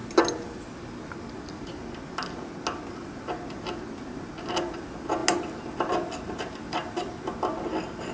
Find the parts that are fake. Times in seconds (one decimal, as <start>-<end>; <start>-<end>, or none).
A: none